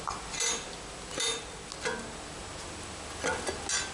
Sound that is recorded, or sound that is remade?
recorded